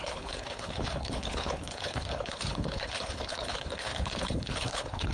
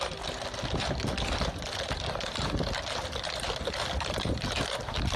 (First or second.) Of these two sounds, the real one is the second